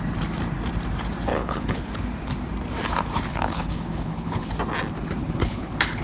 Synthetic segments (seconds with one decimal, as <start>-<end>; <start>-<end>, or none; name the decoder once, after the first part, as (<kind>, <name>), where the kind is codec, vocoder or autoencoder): 1.3-1.9 (codec, HILCodec); 3.3-4.5; 5.2-6.0